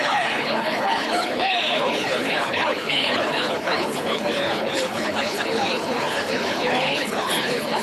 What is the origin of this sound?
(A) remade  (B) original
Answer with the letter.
A